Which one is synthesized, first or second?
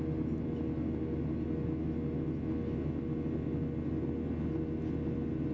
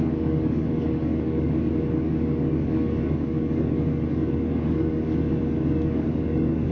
second